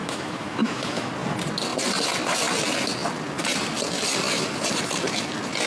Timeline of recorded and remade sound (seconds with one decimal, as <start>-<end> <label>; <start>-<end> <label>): 0.0-1.1 remade; 1.1-5.7 recorded